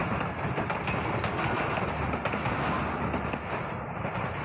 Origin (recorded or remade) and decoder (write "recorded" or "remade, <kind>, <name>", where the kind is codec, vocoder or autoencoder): recorded